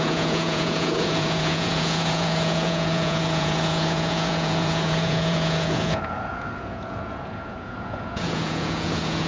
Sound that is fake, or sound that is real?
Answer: fake